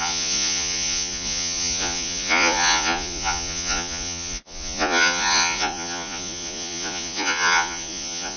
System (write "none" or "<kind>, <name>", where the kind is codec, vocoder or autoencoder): vocoder, Vocos